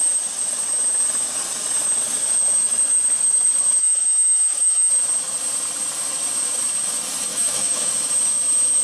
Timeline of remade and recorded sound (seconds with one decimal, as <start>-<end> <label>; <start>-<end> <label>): 0.0-3.8 recorded; 3.8-4.9 remade; 4.9-7.3 recorded; 7.3-7.9 remade; 7.9-8.8 recorded